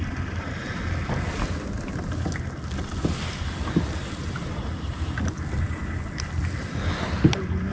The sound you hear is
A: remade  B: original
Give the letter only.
B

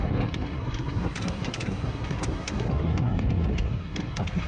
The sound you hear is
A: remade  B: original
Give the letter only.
A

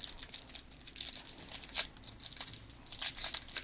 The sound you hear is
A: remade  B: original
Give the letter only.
B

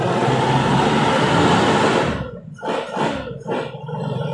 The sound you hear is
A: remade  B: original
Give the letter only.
B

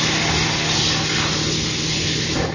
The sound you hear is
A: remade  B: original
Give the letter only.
B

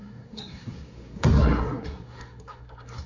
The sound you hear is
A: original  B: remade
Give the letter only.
B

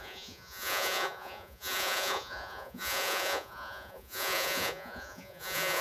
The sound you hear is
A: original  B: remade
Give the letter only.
B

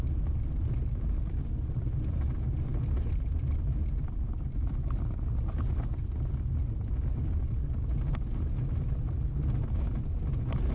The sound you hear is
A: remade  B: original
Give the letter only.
B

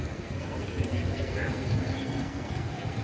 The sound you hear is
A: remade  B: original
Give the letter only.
A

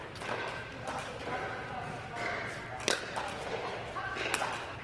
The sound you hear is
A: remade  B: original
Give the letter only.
B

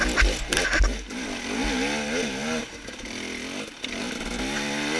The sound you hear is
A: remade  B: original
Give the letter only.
B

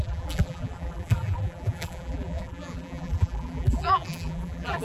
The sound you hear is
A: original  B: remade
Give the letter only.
B